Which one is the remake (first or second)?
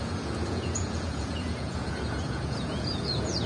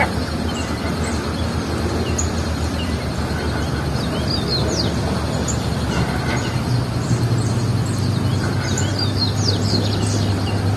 first